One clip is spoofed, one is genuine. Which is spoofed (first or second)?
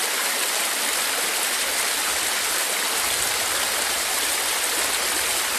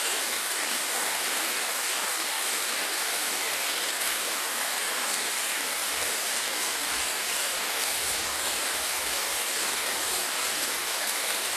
second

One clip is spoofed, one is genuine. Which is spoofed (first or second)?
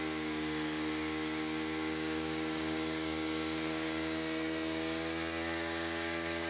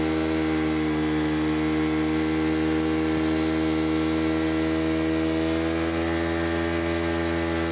first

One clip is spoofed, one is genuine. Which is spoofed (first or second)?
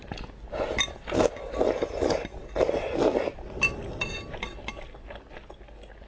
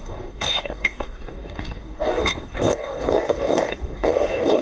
second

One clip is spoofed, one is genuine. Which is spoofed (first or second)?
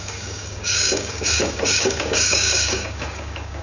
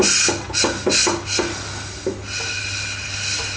first